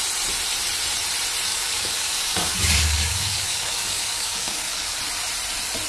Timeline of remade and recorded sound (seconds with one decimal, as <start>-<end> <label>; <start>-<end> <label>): 0.0-1.5 recorded; 1.5-5.0 remade; 5.0-5.9 recorded